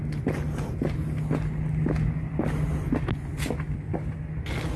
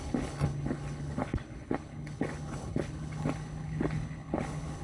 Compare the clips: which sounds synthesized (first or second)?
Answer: second